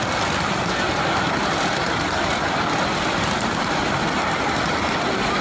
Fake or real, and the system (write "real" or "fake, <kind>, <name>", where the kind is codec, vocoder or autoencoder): real